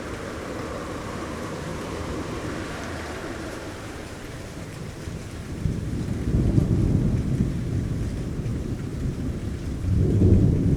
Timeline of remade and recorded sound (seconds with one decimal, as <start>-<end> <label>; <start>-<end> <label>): 0.0-1.7 recorded; 1.7-5.8 remade; 5.8-8.5 recorded; 8.5-9.3 remade; 9.3-10.8 recorded